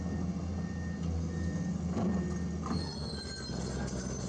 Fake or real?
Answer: real